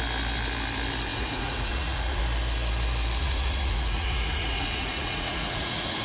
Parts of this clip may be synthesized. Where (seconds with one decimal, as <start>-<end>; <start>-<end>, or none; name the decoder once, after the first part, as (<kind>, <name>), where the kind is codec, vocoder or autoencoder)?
1.1-2.2 (vocoder, Vocos); 3.2-6.0

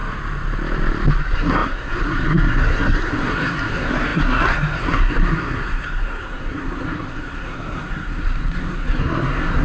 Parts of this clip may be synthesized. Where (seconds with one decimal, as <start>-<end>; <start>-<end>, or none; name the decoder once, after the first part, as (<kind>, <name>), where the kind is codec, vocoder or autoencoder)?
1.2-9.6 (codec, SNAC)